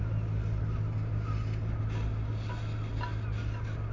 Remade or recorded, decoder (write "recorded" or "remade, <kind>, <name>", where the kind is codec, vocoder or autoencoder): recorded